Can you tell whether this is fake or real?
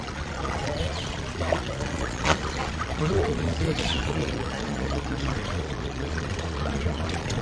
fake